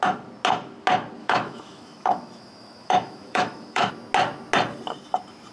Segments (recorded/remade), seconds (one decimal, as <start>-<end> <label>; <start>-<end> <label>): 0.0-1.2 recorded; 1.2-3.9 remade; 3.9-5.5 recorded